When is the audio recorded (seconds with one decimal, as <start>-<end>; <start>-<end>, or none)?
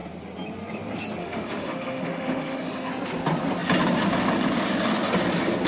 0.0-1.2; 2.9-5.7